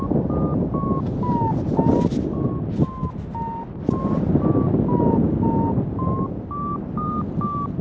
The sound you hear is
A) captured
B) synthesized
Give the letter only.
A